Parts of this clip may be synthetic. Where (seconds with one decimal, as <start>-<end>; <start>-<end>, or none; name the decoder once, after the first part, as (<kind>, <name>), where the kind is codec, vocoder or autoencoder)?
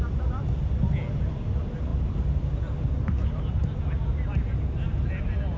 none